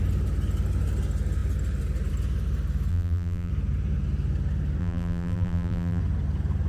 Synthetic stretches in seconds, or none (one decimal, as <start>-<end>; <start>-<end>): 2.9-3.5; 4.8-6.0